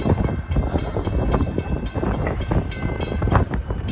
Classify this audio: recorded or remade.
remade